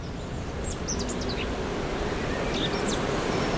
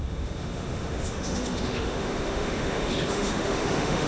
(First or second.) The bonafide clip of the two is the first